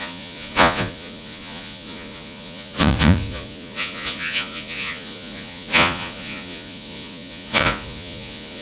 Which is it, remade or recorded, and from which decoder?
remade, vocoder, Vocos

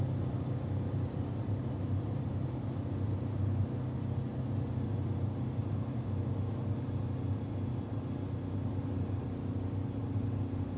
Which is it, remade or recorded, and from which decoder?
recorded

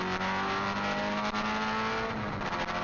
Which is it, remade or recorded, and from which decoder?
recorded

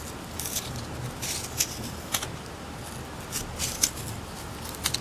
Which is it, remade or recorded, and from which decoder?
recorded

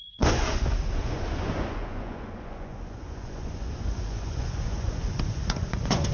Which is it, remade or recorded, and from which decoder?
remade, vocoder, Vocos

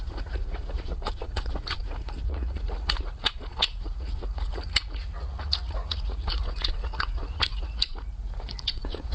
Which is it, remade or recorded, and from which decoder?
remade, vocoder, Vocos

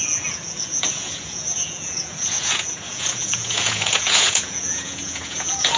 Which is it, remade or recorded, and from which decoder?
remade, vocoder, Vocos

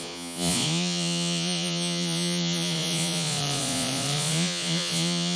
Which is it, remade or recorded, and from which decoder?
remade, vocoder, Vocos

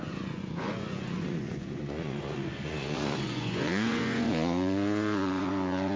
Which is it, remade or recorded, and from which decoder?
remade, vocoder, Vocos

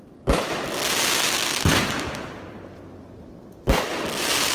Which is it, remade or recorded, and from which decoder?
recorded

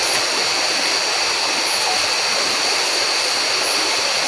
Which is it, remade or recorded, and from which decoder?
recorded